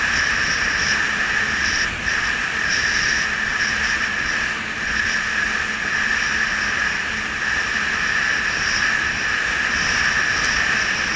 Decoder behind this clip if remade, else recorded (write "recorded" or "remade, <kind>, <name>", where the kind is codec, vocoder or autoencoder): recorded